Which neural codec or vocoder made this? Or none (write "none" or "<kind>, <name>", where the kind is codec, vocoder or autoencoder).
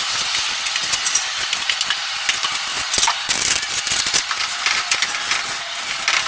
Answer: none